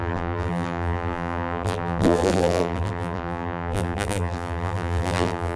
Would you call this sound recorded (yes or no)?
no